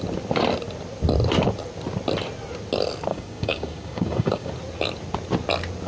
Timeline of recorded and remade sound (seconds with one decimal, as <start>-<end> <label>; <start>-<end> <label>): 0.0-3.1 recorded; 3.1-4.5 remade; 4.5-5.9 recorded